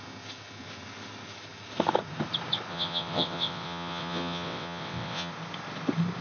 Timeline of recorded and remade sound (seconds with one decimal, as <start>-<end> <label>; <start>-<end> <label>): 0.0-2.7 recorded; 2.7-5.3 remade; 5.3-6.2 recorded